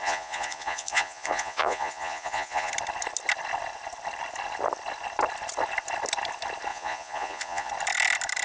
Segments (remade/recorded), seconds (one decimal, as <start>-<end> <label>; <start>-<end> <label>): 0.0-2.7 remade; 2.7-6.7 recorded; 6.7-7.7 remade; 7.7-8.4 recorded